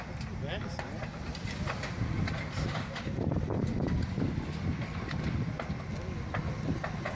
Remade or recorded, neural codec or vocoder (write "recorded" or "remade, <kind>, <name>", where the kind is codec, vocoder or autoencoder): recorded